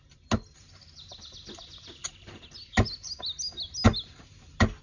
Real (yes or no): yes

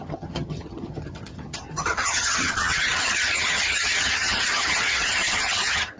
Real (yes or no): no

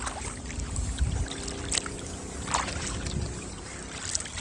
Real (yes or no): yes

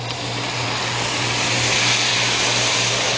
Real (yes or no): no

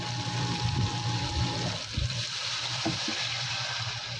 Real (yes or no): no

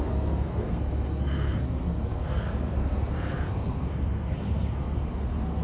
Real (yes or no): no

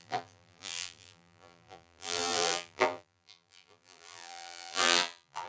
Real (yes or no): no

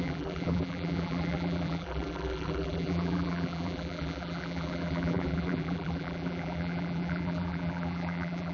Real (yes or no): no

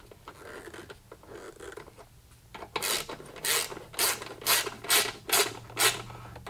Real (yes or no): yes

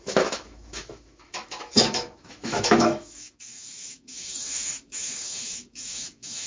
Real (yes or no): no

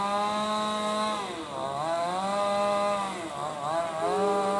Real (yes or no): yes